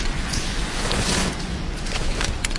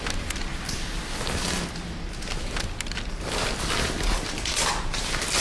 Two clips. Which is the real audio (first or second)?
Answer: second